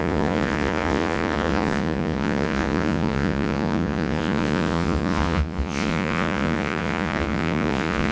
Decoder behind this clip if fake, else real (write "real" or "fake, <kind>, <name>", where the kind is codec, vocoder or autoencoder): fake, vocoder, Vocos